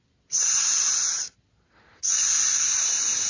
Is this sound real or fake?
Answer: real